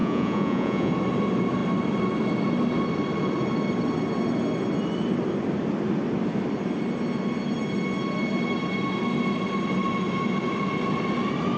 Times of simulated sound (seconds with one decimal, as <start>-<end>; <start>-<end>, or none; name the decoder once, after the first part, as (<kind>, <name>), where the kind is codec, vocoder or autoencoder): 0.0-0.9 (vocoder, Vocos)